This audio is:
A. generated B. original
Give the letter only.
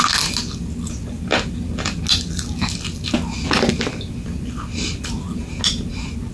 B